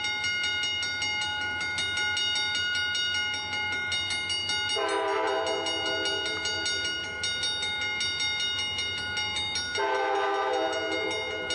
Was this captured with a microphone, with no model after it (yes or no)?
yes